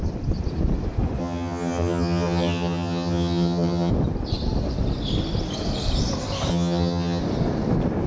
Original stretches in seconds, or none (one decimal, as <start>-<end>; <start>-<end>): 0.0-1.2; 3.9-6.5; 7.2-8.1